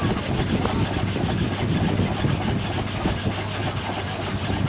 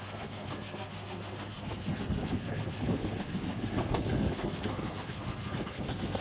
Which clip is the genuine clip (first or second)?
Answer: first